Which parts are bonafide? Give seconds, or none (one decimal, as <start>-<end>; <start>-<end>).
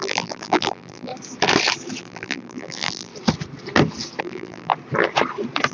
1.1-2.0; 3.1-4.2; 4.7-5.7